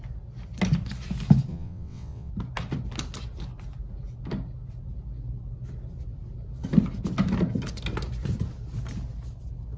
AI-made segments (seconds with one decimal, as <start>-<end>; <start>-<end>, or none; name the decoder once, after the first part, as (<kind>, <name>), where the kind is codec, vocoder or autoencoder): 1.5-2.3 (vocoder, WaveNeXt)